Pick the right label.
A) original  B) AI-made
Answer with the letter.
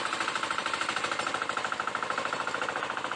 A